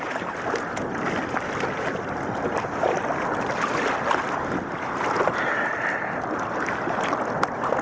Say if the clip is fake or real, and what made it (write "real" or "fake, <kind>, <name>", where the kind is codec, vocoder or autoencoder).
real